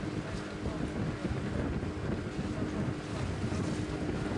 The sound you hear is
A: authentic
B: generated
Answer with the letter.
A